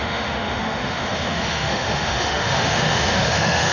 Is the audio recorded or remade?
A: remade